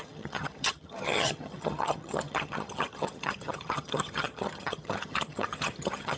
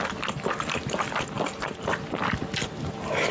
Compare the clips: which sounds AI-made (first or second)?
first